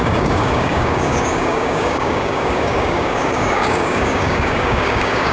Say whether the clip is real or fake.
fake